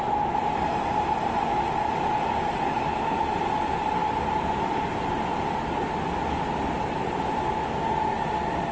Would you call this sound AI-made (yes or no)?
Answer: no